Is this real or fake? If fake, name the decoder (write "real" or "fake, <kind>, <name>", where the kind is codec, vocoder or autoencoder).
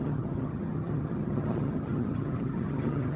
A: fake, vocoder, HiFi-GAN